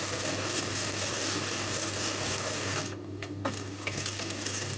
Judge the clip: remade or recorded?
remade